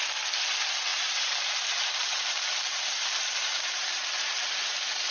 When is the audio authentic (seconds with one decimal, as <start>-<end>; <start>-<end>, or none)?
0.0-0.9; 4.0-5.1